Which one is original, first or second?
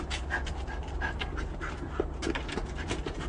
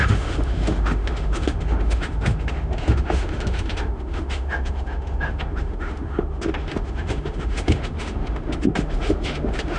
first